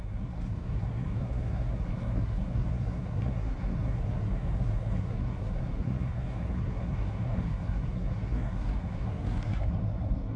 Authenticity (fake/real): fake